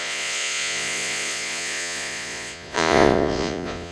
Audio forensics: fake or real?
fake